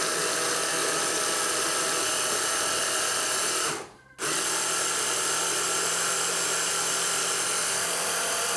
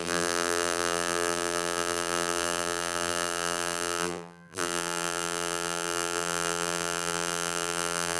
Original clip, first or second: first